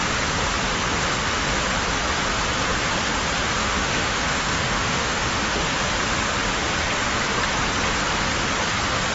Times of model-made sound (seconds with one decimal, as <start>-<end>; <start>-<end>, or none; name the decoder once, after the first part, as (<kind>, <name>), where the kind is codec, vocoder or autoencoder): 3.6-5.7 (autoencoder, DAC-VAE)